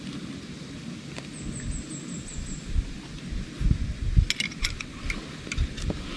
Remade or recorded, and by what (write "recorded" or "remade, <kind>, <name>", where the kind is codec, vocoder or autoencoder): recorded